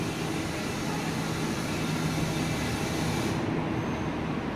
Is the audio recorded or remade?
recorded